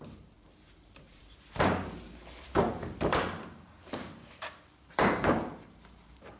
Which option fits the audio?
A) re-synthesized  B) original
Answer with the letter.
A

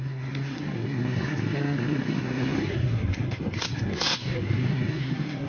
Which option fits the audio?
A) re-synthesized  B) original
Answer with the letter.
A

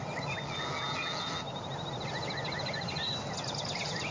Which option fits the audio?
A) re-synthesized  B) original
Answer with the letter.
B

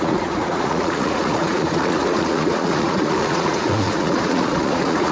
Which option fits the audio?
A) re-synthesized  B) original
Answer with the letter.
A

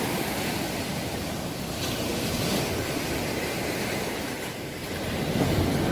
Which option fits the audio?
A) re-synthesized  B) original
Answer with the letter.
B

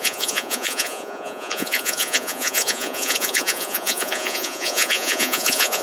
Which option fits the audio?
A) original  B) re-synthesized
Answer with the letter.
B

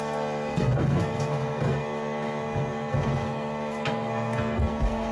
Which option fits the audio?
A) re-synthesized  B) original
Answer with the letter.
A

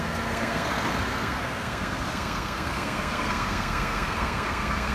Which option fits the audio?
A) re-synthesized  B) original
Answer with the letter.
A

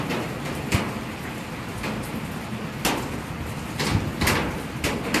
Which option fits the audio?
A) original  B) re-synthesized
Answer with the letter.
A